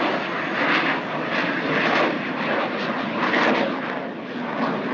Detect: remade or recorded recorded